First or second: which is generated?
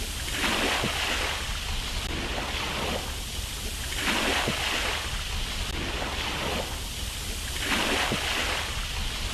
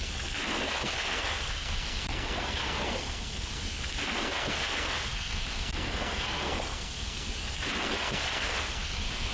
second